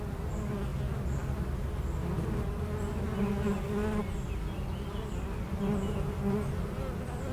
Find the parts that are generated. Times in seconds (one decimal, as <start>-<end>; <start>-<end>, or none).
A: none